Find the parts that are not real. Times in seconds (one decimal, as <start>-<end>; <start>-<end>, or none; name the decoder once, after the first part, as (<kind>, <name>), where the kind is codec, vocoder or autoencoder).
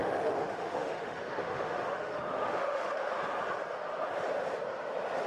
0.0-3.2 (autoencoder, DAC-VAE)